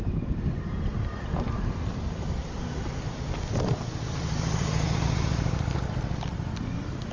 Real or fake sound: fake